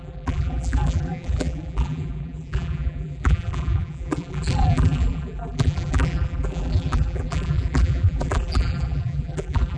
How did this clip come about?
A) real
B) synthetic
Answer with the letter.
B